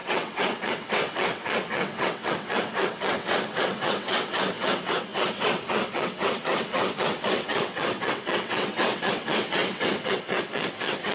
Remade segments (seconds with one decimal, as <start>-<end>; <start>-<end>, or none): 0.0-11.1